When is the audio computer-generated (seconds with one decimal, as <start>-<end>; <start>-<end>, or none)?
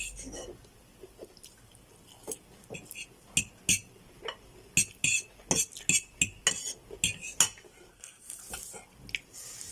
7.9-8.4